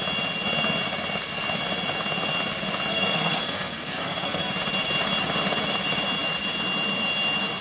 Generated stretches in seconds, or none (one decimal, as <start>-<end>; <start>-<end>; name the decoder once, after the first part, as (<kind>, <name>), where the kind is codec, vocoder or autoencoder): 2.9-4.5 (codec, SNAC)